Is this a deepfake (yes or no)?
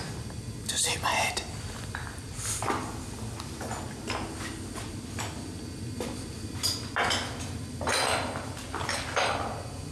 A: no